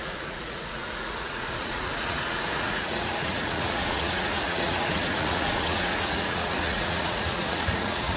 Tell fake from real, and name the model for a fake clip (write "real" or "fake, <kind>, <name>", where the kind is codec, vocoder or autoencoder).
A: fake, vocoder, Vocos